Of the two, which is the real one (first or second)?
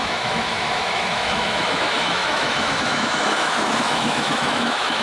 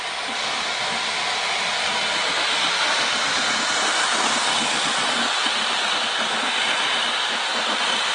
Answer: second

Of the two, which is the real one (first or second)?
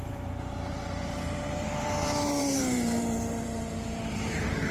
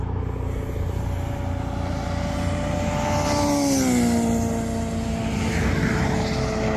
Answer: second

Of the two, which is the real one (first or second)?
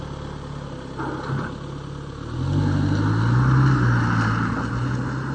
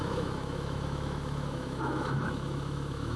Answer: first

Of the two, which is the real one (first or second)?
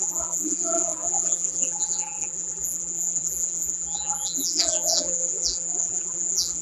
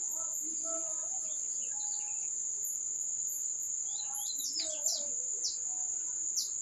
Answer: second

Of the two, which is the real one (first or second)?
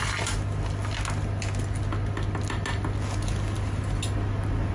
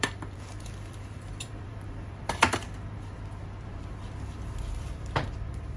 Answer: first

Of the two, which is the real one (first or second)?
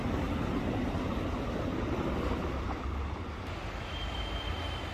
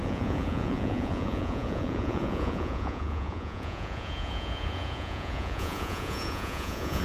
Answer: first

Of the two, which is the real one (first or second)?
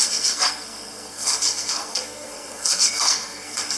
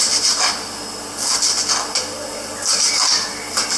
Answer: second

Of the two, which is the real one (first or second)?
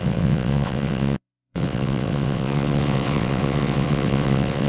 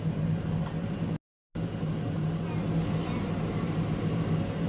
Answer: second